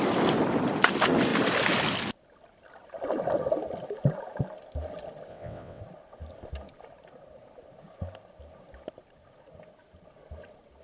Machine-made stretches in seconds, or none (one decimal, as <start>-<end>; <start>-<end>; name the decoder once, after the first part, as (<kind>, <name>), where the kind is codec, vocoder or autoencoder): 5.3-5.8 (vocoder, WaveNeXt)